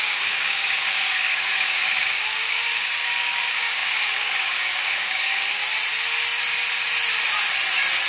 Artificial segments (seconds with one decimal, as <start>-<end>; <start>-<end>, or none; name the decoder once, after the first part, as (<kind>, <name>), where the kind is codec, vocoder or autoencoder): 0.0-5.6 (codec, DAC)